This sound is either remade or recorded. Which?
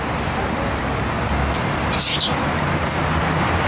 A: recorded